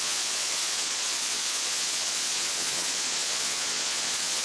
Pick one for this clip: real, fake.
fake